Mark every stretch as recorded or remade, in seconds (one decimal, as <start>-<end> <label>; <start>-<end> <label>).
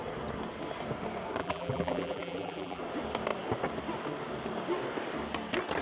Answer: 0.0-1.4 recorded; 1.4-2.8 remade; 2.8-5.8 recorded